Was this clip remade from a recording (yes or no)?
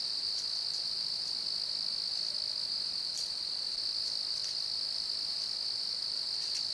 no